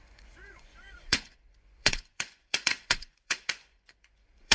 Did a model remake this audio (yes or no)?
yes